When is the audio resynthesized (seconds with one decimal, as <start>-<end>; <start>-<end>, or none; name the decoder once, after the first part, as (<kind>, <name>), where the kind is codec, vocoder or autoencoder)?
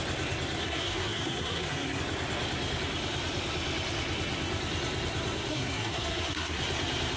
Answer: 0.6-2.0 (codec, SNAC); 5.5-6.6